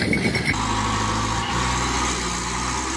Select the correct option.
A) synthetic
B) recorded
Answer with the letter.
B